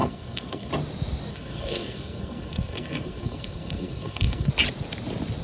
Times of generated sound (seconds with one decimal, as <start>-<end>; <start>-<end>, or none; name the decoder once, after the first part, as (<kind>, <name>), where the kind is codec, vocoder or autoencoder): 0.0-0.7 (codec, SNAC); 1.3-4.5